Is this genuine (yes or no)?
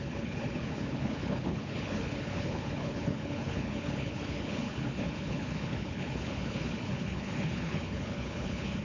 no